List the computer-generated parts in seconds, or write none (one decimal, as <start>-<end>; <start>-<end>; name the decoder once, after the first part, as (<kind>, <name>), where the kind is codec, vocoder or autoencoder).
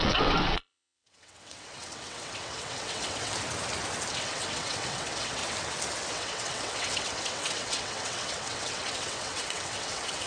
0.0-3.3 (vocoder, WaveNeXt); 4.1-5.4; 6.1-10.3